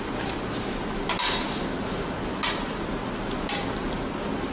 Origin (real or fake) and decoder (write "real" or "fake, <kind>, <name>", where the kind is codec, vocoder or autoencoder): real